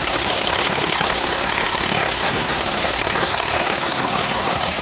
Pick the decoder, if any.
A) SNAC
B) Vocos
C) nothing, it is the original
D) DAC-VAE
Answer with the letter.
A